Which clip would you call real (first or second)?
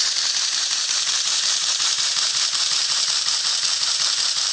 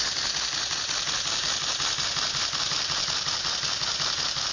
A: second